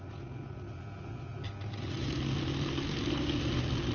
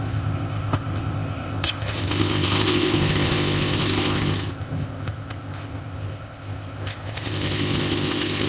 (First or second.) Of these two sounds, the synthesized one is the second